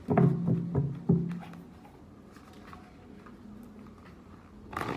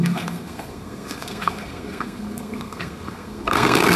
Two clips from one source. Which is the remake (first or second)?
second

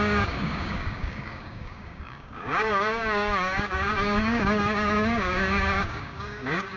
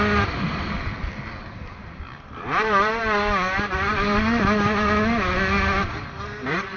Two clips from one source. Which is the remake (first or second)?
first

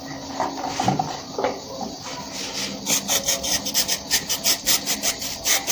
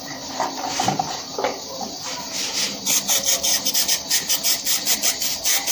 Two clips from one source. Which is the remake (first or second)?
second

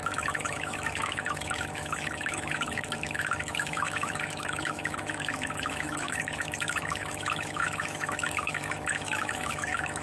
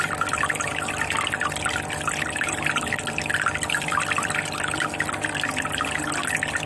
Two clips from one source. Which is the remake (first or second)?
first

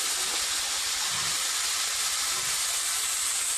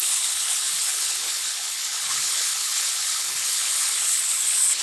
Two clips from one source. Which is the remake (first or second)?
second